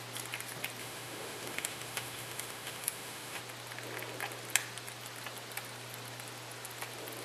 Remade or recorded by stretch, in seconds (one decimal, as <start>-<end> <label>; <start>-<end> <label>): 0.0-0.8 recorded; 0.8-3.4 remade; 3.4-7.2 recorded